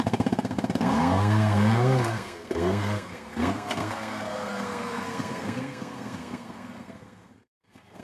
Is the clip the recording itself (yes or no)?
no